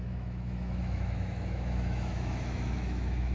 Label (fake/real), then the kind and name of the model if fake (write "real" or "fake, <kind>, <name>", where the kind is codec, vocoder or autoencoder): fake, autoencoder, DAC-VAE